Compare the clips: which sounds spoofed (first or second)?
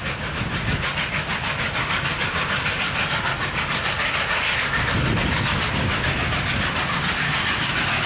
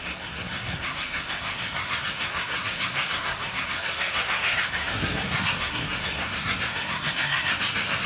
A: second